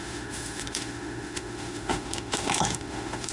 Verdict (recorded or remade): remade